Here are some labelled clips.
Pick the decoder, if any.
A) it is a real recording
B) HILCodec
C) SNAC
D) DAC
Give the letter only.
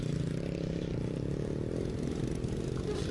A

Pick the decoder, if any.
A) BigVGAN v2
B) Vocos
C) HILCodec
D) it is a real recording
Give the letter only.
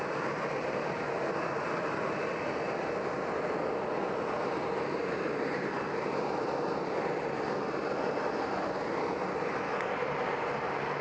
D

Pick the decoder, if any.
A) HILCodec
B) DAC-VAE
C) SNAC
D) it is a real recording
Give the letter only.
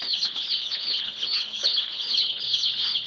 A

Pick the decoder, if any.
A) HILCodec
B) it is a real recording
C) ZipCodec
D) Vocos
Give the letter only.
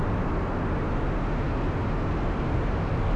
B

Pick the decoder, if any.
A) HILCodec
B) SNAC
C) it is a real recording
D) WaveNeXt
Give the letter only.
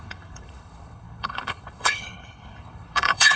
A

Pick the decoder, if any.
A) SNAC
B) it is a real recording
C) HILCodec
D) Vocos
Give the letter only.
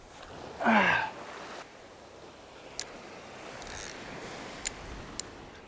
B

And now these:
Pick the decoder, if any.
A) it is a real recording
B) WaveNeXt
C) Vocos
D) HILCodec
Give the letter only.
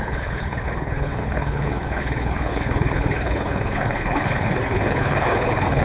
D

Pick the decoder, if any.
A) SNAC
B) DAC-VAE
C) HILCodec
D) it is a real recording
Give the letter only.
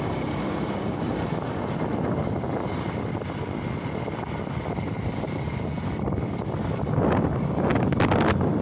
D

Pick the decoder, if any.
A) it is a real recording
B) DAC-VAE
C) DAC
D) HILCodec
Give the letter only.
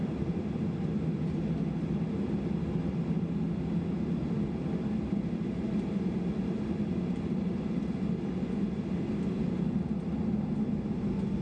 A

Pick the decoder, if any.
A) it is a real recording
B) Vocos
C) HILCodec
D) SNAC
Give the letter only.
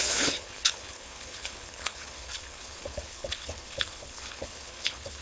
C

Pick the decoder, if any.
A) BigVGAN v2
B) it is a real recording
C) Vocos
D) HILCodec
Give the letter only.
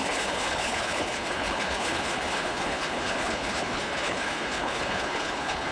D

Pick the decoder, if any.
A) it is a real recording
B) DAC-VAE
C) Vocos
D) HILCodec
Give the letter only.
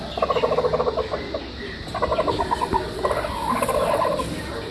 A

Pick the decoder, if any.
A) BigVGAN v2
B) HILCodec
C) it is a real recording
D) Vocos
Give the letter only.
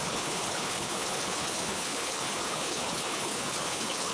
B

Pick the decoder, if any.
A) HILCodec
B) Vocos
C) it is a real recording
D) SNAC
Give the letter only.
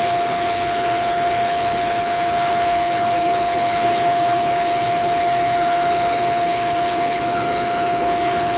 A